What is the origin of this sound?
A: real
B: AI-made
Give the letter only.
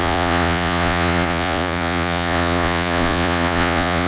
B